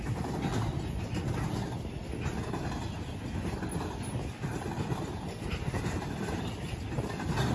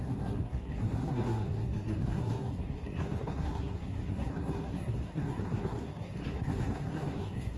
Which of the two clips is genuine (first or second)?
first